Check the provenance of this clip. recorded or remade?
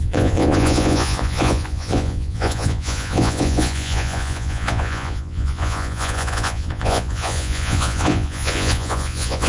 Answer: remade